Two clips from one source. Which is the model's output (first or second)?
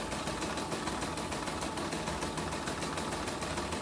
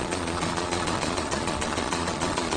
second